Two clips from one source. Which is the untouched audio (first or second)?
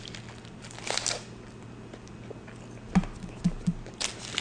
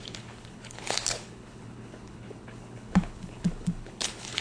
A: first